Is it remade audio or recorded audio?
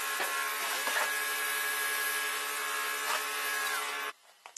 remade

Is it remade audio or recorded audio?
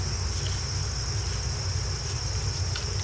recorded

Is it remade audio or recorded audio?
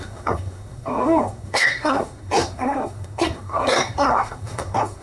remade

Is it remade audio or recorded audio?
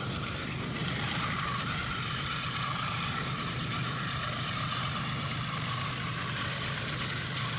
remade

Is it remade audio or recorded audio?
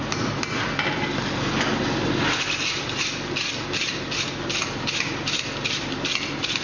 recorded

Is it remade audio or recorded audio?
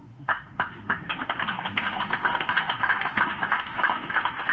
remade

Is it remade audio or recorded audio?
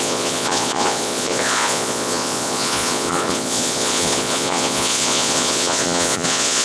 remade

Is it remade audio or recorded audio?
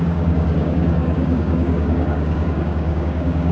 remade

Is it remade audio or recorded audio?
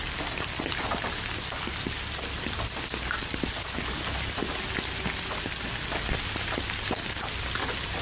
recorded